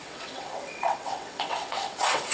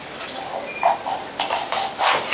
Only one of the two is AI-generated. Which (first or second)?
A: first